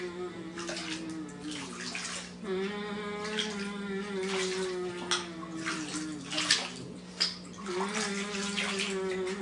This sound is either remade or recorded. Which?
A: recorded